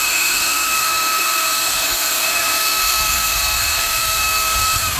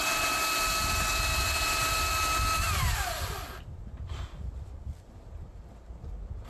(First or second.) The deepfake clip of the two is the first